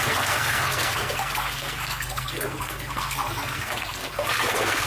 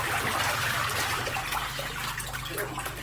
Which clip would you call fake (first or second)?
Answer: first